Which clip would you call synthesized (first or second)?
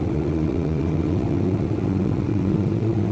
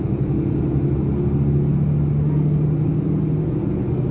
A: first